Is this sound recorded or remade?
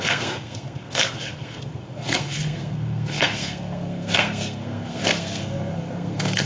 remade